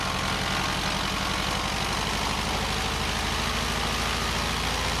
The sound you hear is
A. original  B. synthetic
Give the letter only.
A